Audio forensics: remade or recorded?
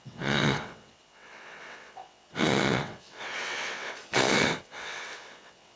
remade